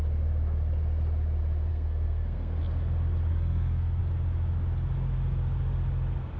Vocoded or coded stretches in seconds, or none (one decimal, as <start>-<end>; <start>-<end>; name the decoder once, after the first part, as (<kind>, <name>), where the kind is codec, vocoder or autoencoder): 1.7-2.6 (codec, SNAC); 3.3-4.0